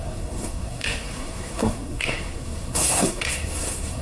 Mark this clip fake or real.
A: fake